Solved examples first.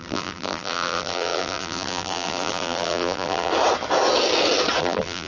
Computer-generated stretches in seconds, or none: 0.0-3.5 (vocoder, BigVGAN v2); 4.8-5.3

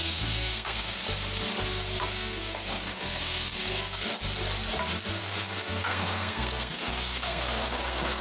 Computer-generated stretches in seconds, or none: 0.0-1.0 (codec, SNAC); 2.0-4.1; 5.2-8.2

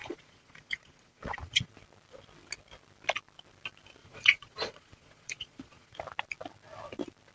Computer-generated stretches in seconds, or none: 0.0-1.7 (vocoder, Vocos); 4.0-6.0

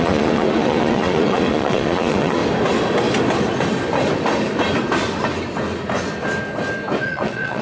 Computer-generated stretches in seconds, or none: 0.0-2.4 (vocoder, Vocos); 7.0-7.6

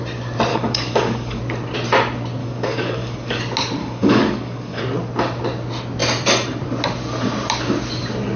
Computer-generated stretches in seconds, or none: 0.5-1.4 (codec, DAC); 2.4-3.4; 3.8-4.8

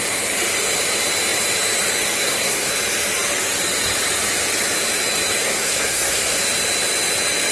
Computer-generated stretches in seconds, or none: 2.2-2.7 (codec, SNAC); 5.4-6.4

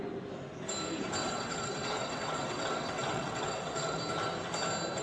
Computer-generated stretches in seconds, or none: 1.2-4.0 (vocoder, WaveNeXt)